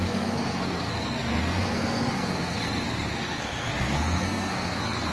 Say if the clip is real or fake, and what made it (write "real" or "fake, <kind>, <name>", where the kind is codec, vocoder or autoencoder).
fake, codec, SNAC